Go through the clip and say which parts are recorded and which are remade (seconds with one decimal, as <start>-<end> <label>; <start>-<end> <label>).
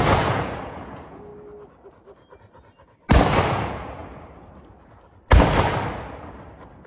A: 0.0-1.3 remade; 1.3-3.5 recorded; 3.5-4.0 remade; 4.0-6.9 recorded